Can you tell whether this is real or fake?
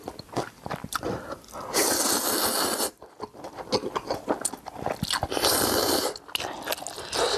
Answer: real